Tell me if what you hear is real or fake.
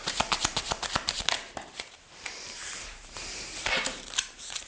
fake